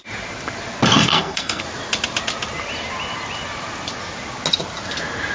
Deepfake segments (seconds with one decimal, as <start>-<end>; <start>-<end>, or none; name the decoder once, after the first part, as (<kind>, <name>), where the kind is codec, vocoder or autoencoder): 0.9-1.6 (codec, SNAC)

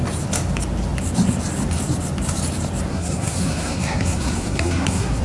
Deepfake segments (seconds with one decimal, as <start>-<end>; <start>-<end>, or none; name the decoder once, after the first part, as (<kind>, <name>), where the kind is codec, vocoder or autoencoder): 2.9-5.2 (codec, SNAC)

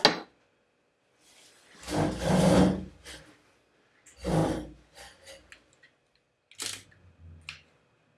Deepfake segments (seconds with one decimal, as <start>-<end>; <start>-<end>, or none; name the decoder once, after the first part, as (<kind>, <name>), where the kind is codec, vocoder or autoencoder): none

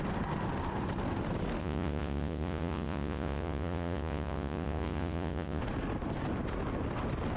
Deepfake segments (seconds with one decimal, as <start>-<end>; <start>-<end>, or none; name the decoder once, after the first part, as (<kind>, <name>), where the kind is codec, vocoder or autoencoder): 1.6-5.6 (vocoder, Vocos)

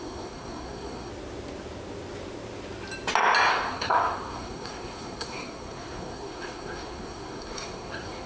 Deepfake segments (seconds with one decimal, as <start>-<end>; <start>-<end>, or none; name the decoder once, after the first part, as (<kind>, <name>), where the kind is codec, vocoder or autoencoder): 0.0-1.1 (codec, SNAC); 3.5-8.3

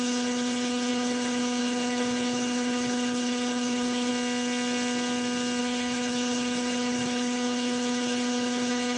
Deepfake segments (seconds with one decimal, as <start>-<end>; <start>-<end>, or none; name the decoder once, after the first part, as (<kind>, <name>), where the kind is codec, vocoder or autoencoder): 0.0-4.1 (codec, HILCodec); 5.6-9.0